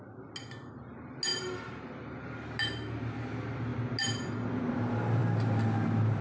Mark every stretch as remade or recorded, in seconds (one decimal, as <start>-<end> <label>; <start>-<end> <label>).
0.0-6.2 recorded